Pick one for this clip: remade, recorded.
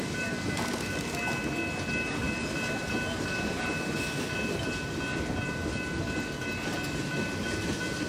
recorded